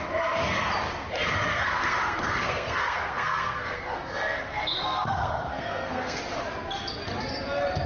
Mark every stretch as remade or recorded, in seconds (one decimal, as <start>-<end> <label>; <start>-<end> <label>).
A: 0.0-1.5 recorded; 1.5-6.2 remade; 6.2-7.9 recorded

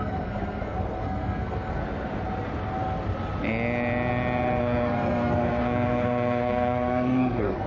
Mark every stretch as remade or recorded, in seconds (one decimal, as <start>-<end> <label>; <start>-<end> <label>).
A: 0.0-1.8 remade; 1.8-4.6 recorded; 4.6-7.7 remade

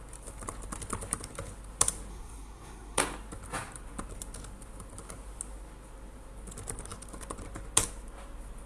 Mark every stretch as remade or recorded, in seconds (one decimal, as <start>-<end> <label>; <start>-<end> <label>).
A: 0.0-2.1 recorded; 2.1-3.0 remade; 3.0-8.7 recorded

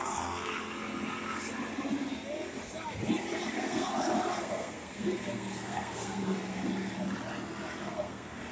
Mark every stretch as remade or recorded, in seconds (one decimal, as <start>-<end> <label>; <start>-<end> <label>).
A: 0.0-0.6 remade; 0.6-3.5 recorded; 3.5-3.9 remade; 3.9-4.4 recorded; 4.4-6.7 remade; 6.7-7.8 recorded; 7.8-8.5 remade

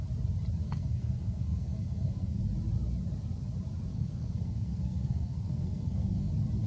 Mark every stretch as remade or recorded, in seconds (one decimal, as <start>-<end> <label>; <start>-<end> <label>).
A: 0.0-0.6 recorded; 0.6-2.4 remade; 2.4-3.9 recorded; 3.9-6.3 remade; 6.3-6.7 recorded

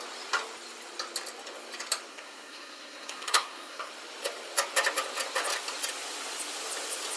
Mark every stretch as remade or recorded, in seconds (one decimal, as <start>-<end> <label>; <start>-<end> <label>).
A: 0.0-2.1 recorded; 2.1-3.9 remade; 3.9-7.2 recorded